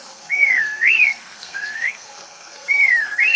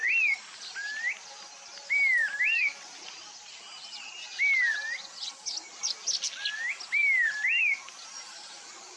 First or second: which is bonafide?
second